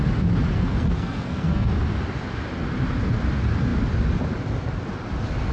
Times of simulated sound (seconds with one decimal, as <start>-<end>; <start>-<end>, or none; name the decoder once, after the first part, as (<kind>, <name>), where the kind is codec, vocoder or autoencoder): 0.5-1.7 (codec, SNAC)